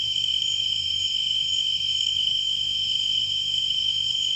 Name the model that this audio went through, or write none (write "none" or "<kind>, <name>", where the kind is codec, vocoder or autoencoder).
autoencoder, DAC-VAE